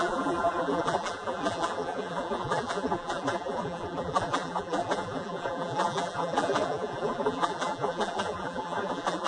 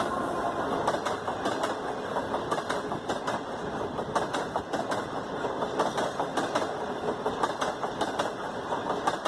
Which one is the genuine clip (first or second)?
second